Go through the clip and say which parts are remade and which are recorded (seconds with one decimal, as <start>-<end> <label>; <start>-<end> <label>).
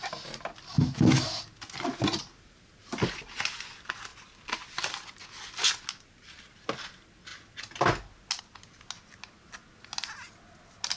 0.0-0.8 recorded; 0.8-1.4 remade; 1.4-11.0 recorded